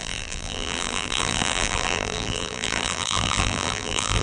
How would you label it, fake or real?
fake